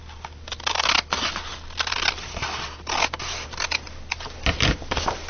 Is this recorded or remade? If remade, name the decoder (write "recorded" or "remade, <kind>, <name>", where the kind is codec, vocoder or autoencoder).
recorded